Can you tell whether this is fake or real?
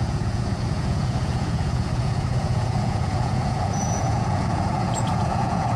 fake